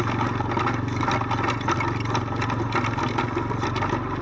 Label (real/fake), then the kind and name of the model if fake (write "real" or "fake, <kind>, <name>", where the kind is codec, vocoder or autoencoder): real